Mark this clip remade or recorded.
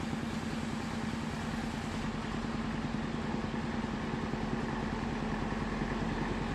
recorded